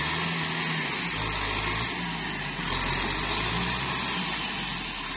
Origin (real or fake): real